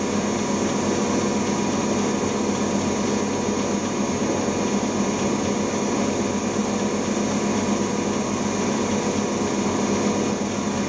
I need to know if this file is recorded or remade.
recorded